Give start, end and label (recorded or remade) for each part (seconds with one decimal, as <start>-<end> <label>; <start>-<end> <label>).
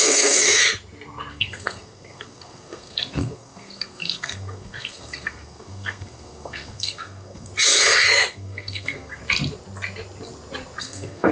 0.0-0.6 remade; 0.6-1.3 recorded; 1.3-7.5 remade; 7.5-8.3 recorded; 8.3-9.2 remade; 9.2-10.8 recorded; 10.8-11.3 remade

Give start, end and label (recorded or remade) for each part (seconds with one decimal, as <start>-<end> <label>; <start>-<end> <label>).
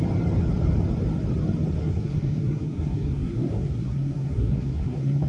0.0-1.8 recorded; 1.8-5.3 remade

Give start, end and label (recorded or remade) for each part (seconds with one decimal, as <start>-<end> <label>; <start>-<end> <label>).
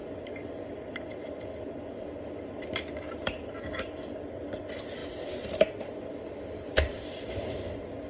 0.0-8.1 recorded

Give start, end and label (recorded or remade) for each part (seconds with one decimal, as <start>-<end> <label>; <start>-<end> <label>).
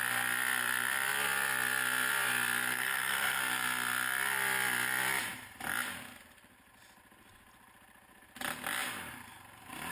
0.0-2.7 recorded; 2.7-3.4 remade; 3.4-9.9 recorded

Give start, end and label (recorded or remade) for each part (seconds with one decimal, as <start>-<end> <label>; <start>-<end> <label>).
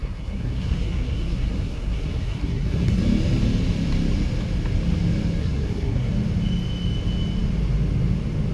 0.0-3.0 remade; 3.0-5.4 recorded; 5.4-6.1 remade; 6.1-8.5 recorded